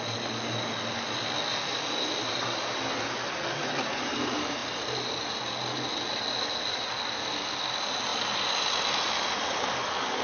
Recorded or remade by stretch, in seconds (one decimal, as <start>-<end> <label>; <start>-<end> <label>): 0.0-10.2 recorded